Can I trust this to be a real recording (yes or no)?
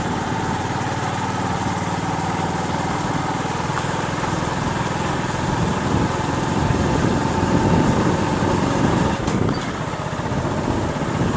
yes